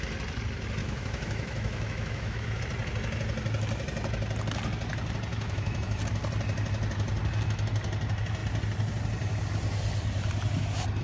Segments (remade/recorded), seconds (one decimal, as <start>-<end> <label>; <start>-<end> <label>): 0.0-0.8 recorded; 0.8-2.6 remade; 2.6-5.3 recorded; 5.3-6.0 remade; 6.0-11.0 recorded